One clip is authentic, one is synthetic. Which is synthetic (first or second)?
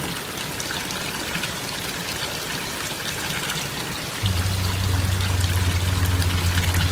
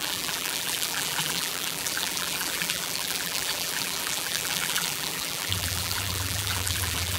second